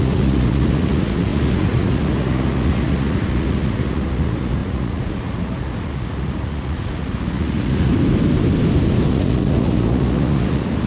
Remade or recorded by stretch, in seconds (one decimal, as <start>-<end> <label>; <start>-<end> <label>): 0.0-7.9 remade; 7.9-9.1 recorded; 9.1-10.9 remade